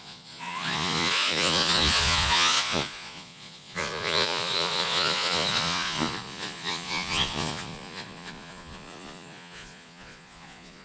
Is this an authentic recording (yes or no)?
no